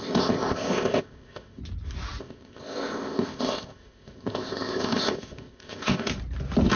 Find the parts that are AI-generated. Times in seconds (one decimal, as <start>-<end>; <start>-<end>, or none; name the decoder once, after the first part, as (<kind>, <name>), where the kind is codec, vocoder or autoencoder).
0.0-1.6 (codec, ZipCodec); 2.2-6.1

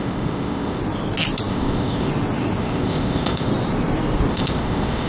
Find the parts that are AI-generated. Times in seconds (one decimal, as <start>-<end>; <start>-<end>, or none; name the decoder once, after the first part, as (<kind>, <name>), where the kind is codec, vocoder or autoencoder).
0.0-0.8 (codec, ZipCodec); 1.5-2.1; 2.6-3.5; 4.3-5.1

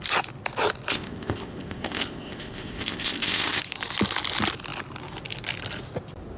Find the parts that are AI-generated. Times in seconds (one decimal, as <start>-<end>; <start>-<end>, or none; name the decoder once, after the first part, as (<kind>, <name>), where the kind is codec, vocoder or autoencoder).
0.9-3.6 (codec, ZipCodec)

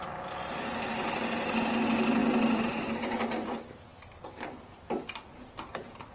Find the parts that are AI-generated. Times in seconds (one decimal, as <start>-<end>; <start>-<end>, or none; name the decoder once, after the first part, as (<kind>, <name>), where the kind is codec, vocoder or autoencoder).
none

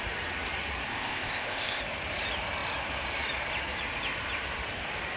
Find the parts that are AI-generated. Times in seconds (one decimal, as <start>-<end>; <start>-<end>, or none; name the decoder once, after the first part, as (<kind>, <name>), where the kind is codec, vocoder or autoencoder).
0.9-1.8 (codec, ZipCodec)